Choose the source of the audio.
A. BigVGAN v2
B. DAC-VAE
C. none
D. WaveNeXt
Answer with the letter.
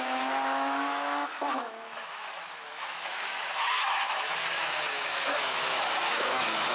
B